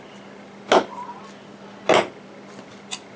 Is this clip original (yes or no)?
yes